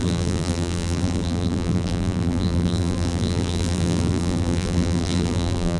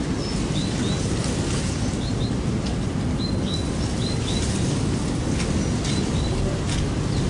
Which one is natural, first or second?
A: second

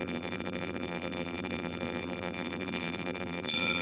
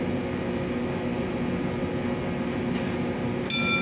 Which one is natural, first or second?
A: second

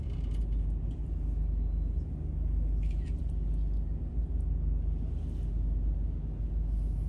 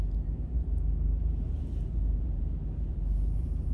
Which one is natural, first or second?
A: first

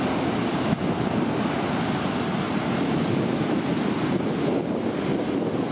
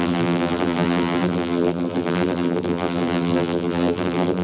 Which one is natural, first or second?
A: first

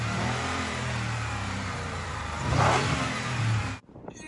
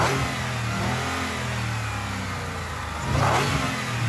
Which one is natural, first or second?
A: second